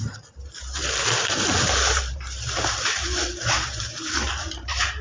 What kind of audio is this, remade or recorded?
remade